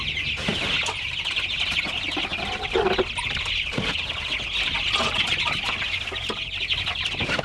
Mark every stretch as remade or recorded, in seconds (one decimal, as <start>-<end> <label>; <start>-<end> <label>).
0.0-7.4 recorded